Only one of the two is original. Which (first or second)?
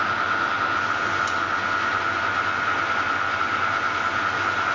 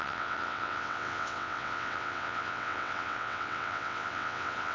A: first